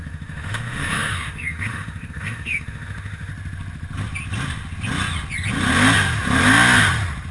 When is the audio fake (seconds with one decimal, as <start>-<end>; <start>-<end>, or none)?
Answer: 0.0-3.3